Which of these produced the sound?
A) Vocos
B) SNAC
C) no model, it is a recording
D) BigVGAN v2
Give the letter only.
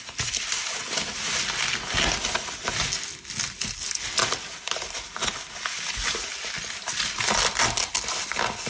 C